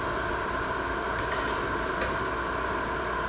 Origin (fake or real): real